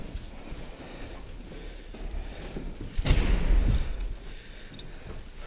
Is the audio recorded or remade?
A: remade